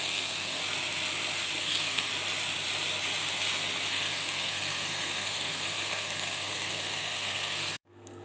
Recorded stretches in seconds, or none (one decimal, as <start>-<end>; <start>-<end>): 0.6-1.6; 2.1-3.9